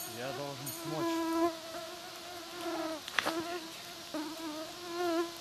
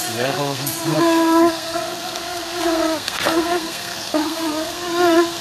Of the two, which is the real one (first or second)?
first